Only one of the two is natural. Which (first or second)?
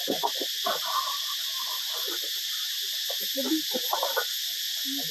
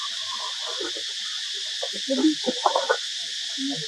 second